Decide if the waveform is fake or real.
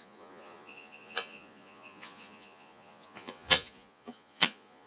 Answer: fake